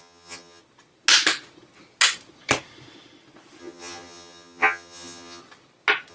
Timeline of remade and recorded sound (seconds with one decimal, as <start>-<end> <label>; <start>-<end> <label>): 0.0-0.6 remade; 0.6-3.6 recorded; 3.6-5.4 remade; 5.4-6.1 recorded